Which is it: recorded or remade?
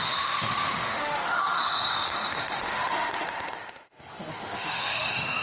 remade